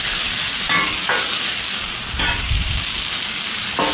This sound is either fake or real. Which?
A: real